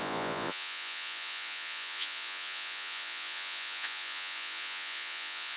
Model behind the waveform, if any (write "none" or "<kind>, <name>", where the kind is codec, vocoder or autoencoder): vocoder, Vocos